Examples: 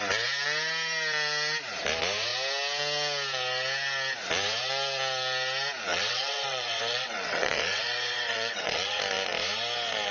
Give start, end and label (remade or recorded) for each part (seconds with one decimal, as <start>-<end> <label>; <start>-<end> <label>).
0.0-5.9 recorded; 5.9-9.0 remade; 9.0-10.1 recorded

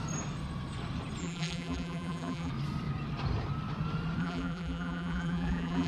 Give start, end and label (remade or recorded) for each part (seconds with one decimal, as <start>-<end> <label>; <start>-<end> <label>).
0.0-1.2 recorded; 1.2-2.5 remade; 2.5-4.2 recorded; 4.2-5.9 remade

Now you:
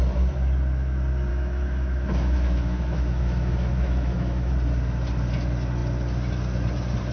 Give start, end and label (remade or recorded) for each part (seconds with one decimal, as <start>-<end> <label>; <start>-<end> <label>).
0.0-1.3 recorded; 1.3-4.5 remade; 4.5-7.1 recorded

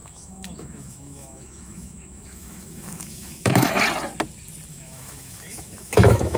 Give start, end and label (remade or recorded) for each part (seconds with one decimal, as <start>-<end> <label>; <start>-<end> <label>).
0.0-3.8 remade; 3.8-4.7 recorded; 4.7-6.4 remade

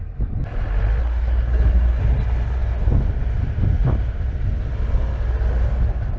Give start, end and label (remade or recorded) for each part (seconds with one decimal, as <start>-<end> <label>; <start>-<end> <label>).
0.0-1.0 recorded; 1.0-2.0 remade; 2.0-6.2 recorded